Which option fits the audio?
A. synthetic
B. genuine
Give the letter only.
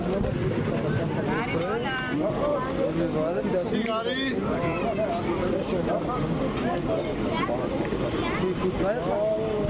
B